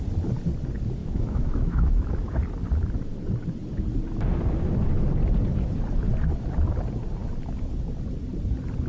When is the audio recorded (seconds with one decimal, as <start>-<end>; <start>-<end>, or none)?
0.0-1.0; 2.1-8.9